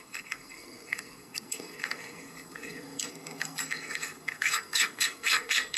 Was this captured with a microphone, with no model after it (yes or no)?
no